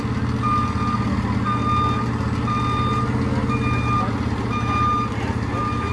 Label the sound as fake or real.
real